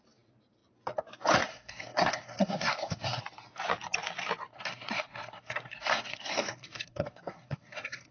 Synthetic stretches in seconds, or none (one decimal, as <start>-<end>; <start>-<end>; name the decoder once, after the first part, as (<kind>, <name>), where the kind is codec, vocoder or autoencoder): 1.5-3.2 (codec, SNAC); 4.5-8.1